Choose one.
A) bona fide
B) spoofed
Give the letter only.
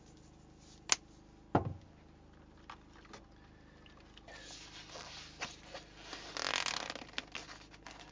A